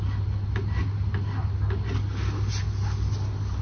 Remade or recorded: recorded